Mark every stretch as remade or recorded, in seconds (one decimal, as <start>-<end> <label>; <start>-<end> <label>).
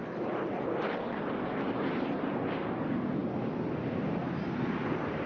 0.0-5.3 recorded